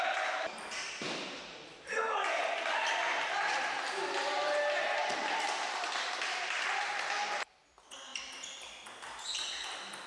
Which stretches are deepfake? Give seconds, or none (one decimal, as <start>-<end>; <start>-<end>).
none